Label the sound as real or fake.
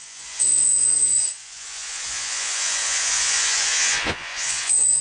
fake